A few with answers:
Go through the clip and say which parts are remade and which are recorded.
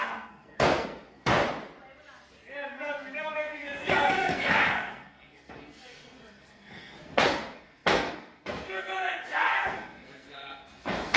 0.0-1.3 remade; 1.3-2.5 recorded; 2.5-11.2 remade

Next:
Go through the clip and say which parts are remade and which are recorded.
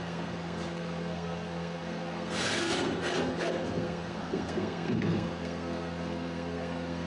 0.0-7.1 remade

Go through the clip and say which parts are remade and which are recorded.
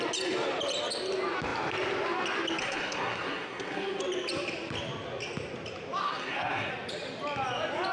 0.0-2.6 recorded; 2.6-4.0 remade; 4.0-6.0 recorded; 6.0-6.7 remade; 6.7-7.9 recorded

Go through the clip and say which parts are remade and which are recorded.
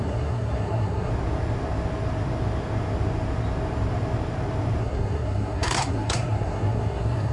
0.0-1.1 remade; 1.1-4.8 recorded; 4.8-7.3 remade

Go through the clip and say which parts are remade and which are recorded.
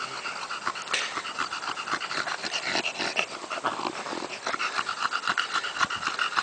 0.0-6.4 recorded